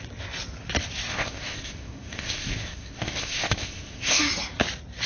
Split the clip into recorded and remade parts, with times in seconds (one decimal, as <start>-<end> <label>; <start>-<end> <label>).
0.0-1.1 recorded; 1.1-4.2 remade; 4.2-5.1 recorded